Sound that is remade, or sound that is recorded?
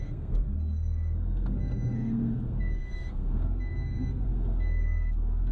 remade